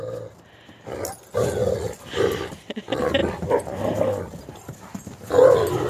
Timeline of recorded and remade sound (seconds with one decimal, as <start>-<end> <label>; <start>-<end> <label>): 0.0-5.9 recorded